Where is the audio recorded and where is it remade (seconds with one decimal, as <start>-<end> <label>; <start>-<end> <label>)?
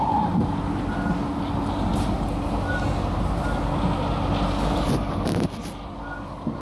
0.0-6.6 recorded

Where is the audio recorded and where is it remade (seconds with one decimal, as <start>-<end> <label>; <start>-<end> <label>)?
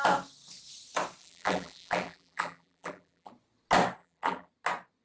0.0-1.2 recorded; 1.2-3.3 remade; 3.3-4.0 recorded; 4.0-4.5 remade; 4.5-5.0 recorded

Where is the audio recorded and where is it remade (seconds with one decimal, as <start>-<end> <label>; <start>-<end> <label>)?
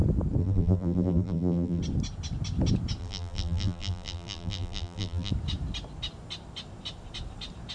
0.0-0.4 recorded; 0.4-1.8 remade; 1.8-3.0 recorded; 3.0-5.3 remade; 5.3-7.7 recorded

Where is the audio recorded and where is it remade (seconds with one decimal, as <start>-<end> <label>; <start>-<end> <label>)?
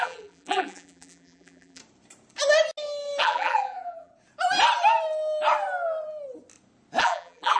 0.0-1.8 remade; 1.8-3.2 recorded; 3.2-4.1 remade; 4.1-7.0 recorded; 7.0-7.6 remade